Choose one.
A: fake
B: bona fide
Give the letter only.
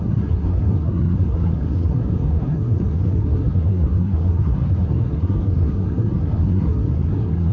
A